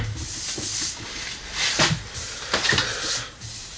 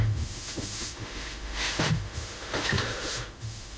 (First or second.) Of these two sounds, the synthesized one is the second